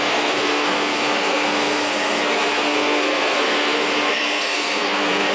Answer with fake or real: fake